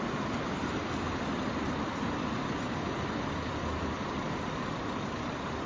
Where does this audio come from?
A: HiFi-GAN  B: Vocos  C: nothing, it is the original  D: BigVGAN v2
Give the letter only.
D